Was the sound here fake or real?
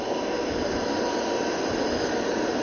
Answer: real